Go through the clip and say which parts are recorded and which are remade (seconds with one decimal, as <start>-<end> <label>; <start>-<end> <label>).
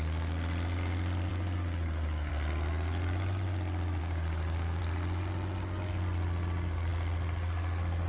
0.0-1.3 recorded; 1.3-2.3 remade; 2.3-4.0 recorded; 4.0-4.8 remade; 4.8-8.1 recorded